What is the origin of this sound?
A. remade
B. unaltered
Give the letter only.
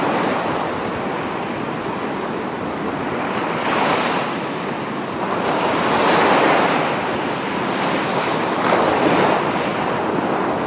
B